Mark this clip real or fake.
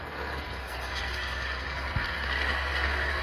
fake